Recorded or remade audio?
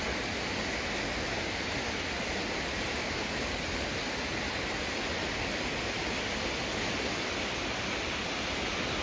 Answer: recorded